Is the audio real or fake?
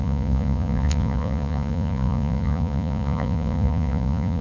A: fake